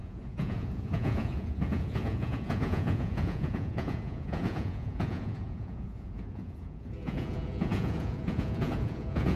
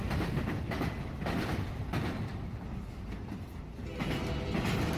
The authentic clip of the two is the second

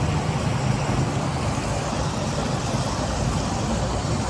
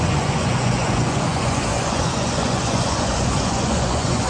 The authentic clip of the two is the first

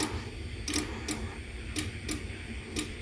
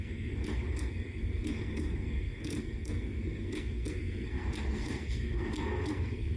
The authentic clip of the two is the first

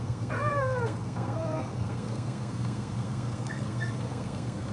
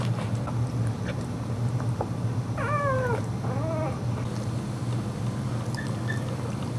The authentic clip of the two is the second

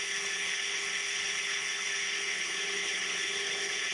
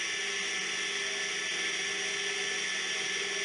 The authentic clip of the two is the second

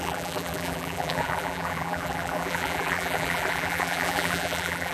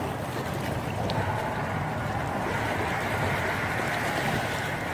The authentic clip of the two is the second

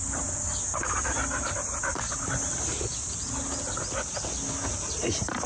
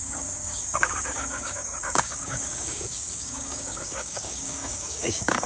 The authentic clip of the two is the first